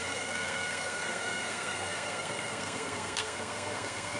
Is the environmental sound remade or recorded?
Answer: remade